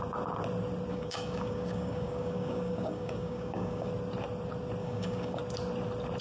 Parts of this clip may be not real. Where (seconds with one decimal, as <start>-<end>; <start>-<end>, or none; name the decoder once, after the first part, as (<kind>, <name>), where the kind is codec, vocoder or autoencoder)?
0.9-3.9 (codec, DAC); 4.8-5.4

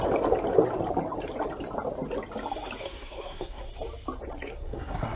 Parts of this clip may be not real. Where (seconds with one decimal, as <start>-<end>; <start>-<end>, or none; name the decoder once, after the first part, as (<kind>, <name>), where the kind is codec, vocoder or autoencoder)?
2.8-3.7 (codec, SNAC); 4.5-5.2

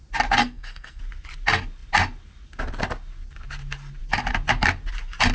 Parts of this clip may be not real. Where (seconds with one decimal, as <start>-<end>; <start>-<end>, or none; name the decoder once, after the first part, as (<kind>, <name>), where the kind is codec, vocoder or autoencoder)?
0.4-1.0 (codec, SNAC)